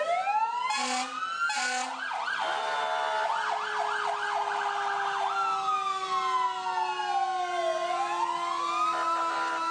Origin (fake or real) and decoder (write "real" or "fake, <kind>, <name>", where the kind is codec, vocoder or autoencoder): real